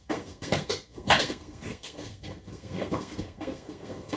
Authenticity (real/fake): fake